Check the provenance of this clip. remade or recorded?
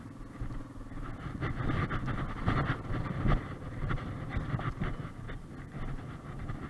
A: recorded